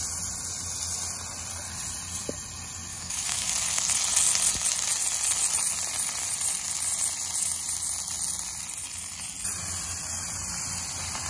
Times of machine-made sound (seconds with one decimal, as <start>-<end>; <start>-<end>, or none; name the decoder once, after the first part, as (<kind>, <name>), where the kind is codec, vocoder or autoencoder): 2.9-3.5 (codec, DAC)